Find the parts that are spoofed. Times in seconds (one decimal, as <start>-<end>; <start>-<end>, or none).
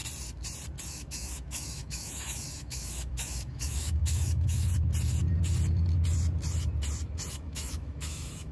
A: 0.8-4.7; 7.3-8.5